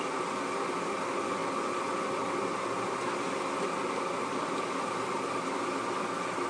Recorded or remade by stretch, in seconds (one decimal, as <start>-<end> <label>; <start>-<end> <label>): 0.0-6.5 recorded